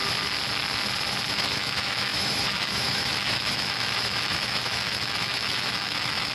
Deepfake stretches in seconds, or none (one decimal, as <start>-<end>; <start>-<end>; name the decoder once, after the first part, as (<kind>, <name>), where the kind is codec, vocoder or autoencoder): 1.3-6.3 (autoencoder, DAC-VAE)